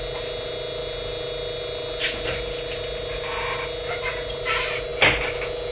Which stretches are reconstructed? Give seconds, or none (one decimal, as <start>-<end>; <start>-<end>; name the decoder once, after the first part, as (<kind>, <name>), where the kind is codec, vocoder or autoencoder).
none